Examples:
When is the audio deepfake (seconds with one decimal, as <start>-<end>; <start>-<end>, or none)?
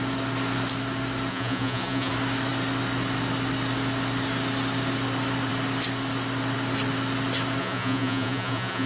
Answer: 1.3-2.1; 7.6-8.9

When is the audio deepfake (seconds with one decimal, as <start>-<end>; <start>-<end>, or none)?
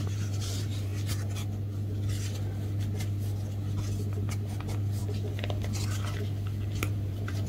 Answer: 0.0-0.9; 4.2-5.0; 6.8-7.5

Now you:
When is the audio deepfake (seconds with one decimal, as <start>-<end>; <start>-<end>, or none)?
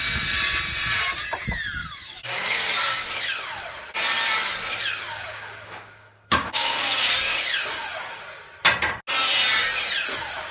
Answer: 1.8-2.7; 5.1-8.2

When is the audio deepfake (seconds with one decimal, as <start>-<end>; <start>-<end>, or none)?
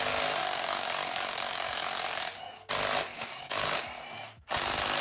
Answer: 0.4-2.7; 3.1-3.8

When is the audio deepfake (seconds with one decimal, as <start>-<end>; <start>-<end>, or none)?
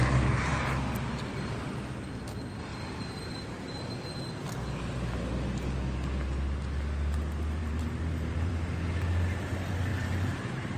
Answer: 2.7-3.9; 7.6-8.5; 9.9-10.8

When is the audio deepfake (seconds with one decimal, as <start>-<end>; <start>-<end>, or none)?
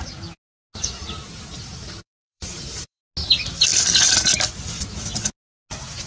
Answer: 1.0-3.0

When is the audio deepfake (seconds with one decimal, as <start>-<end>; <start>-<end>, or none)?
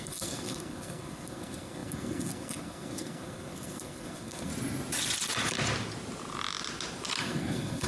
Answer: 0.0-4.5; 7.2-7.9